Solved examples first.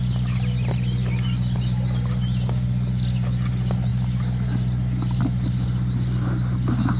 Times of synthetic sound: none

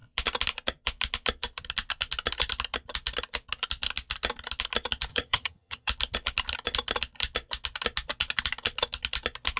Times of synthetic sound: 5.1-5.9 (vocoder, HiFi-GAN)